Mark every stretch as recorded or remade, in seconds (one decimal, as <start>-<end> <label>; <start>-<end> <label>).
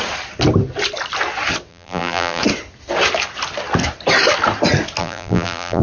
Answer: 0.0-1.7 recorded; 1.7-2.4 remade; 2.4-5.0 recorded; 5.0-5.8 remade